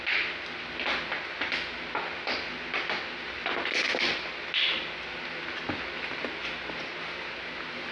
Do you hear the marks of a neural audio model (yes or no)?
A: no